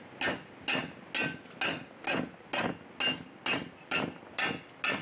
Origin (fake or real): real